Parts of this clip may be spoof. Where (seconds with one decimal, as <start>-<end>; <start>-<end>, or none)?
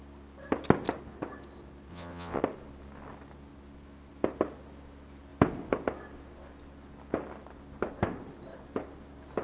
1.9-2.4